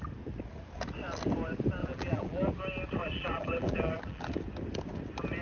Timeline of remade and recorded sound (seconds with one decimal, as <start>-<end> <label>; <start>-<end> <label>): 0.0-1.8 recorded; 1.8-2.5 remade; 2.5-3.0 recorded; 3.0-4.3 remade; 4.3-5.4 recorded